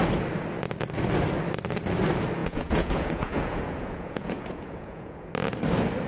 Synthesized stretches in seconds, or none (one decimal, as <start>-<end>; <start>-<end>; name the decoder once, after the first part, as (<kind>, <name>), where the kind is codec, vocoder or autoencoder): 2.4-5.3 (vocoder, Vocos)